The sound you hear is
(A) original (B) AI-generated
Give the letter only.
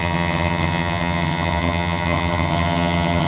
B